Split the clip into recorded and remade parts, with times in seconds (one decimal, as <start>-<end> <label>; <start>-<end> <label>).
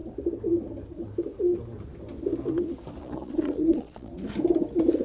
0.0-3.0 recorded; 3.0-4.1 remade; 4.1-5.0 recorded